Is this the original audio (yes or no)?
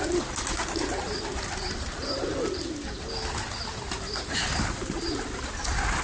yes